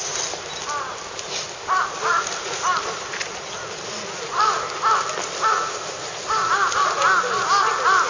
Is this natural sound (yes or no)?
yes